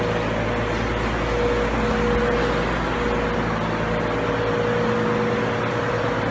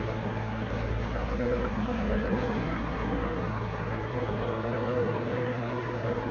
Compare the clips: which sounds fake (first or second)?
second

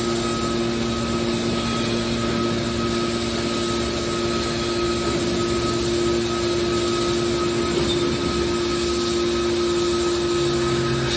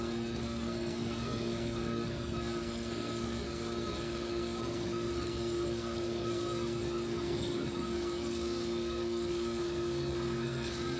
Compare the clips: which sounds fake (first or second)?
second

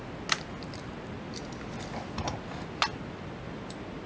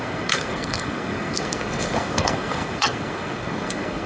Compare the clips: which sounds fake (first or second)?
second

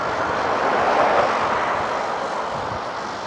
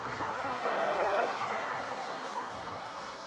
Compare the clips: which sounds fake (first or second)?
second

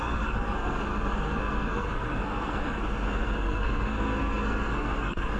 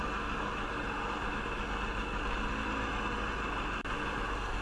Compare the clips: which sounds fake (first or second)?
first